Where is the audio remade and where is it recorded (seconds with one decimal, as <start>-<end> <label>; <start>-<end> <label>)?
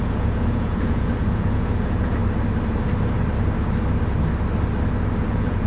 0.0-2.2 remade; 2.2-5.3 recorded; 5.3-5.7 remade